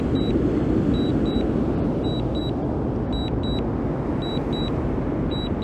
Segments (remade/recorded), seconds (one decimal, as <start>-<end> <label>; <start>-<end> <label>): 0.0-5.6 recorded